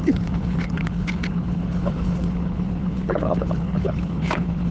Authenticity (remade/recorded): remade